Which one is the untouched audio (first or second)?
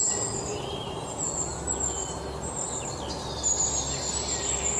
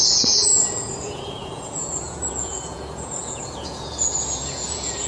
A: first